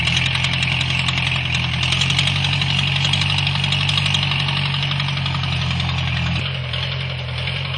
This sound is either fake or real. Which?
real